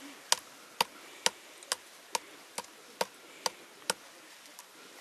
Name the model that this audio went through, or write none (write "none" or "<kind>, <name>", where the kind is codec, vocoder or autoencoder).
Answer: none